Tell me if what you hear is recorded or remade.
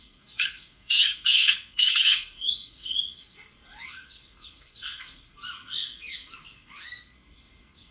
remade